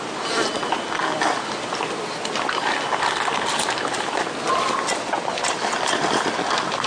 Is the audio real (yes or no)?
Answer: yes